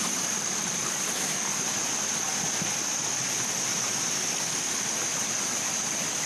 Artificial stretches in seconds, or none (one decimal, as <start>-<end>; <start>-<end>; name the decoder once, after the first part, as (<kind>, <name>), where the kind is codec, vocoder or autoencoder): none